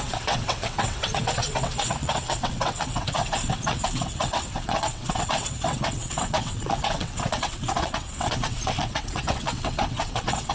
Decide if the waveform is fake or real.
fake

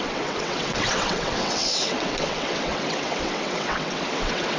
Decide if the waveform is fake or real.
fake